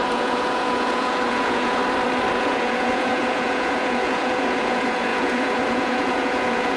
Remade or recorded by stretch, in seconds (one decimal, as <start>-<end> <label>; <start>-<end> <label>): 0.0-1.8 remade; 1.8-2.3 recorded; 2.3-6.8 remade